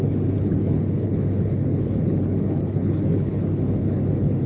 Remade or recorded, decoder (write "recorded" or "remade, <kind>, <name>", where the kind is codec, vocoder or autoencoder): remade, codec, HILCodec